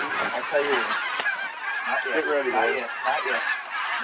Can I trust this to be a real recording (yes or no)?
yes